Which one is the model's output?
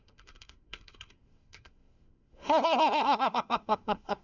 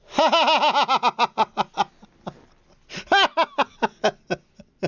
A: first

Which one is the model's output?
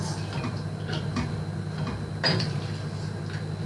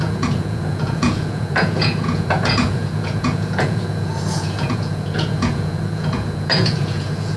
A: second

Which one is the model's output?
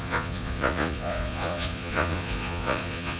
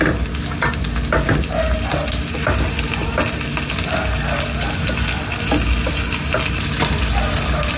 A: first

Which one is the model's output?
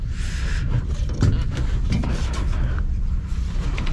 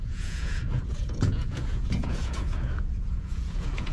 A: second